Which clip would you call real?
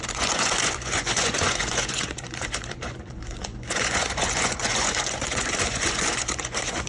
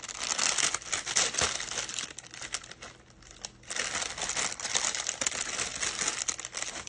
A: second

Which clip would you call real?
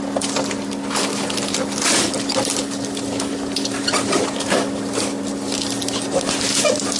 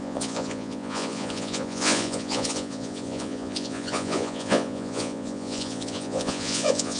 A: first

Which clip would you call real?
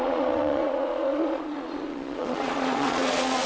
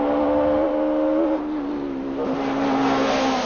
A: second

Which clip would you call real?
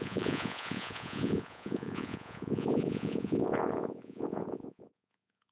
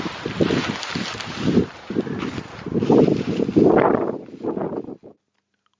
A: second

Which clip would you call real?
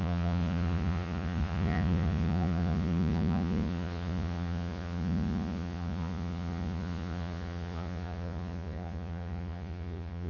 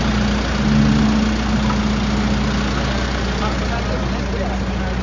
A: second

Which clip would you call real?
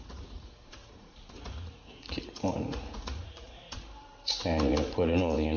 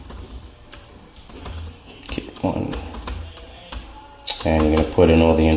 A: second